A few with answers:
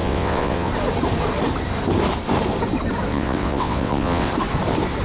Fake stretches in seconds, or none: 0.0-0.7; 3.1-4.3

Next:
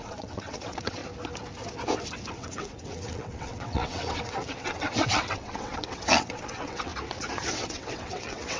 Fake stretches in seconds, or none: 0.0-1.0; 2.3-6.9; 7.5-8.6

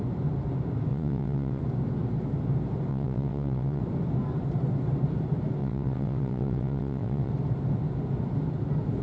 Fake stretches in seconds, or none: 0.9-1.6; 2.9-3.8; 5.6-7.3

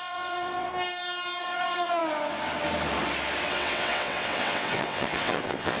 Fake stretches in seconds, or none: 0.0-0.7; 1.4-2.0; 3.5-5.8

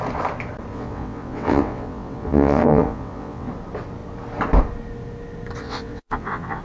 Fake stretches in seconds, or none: 0.7-3.5; 5.6-6.6

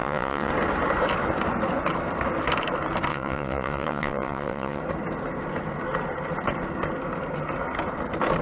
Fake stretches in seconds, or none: 0.0-0.5; 3.1-4.8

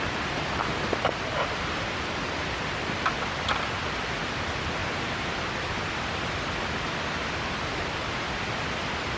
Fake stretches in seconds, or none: none

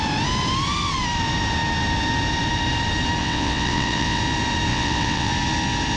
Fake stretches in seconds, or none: 3.2-4.2; 4.7-5.3